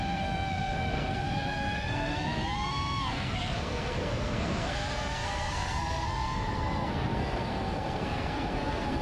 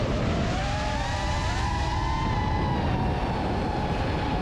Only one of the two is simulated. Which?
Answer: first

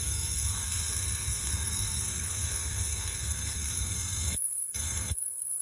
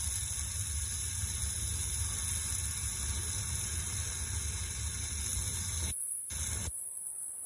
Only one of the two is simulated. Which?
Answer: first